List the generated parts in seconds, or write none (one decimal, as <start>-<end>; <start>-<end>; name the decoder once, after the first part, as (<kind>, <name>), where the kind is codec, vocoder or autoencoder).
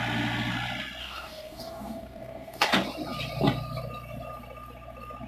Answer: 1.0-2.7 (codec, DAC)